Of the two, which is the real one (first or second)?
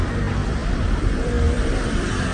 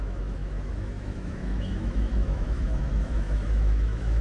first